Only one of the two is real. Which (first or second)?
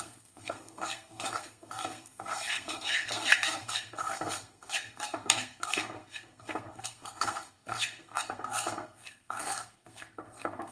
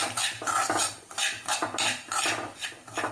second